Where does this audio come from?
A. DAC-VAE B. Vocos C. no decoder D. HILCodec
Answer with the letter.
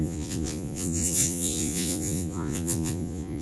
B